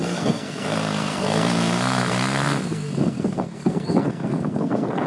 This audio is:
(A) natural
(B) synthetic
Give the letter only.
B